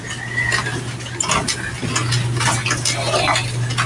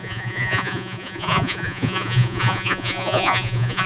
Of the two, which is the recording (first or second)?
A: first